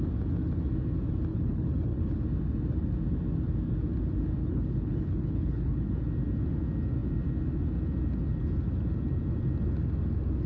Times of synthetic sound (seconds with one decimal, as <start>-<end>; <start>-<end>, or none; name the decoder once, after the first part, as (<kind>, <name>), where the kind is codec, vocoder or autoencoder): 1.3-2.2 (codec, HILCodec); 4.4-5.9